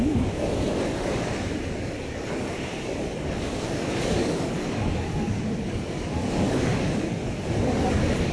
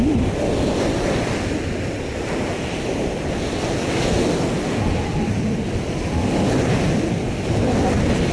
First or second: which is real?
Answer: second